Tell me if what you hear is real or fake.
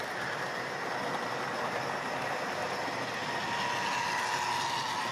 real